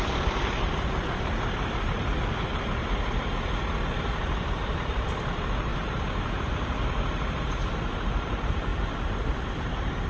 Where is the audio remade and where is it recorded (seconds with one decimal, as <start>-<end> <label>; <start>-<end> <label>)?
0.0-2.8 remade; 2.8-4.0 recorded; 4.0-6.8 remade; 6.8-7.4 recorded; 7.4-10.1 remade